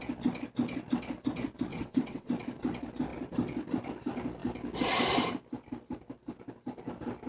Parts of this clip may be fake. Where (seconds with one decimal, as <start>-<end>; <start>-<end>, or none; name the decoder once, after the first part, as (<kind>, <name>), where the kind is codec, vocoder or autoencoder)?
1.7-2.3 (vocoder, WaveNeXt)